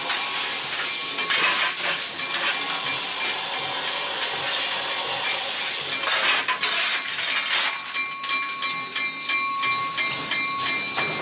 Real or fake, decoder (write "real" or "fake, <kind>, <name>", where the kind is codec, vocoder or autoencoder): real